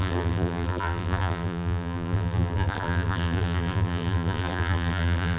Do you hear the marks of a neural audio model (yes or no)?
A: yes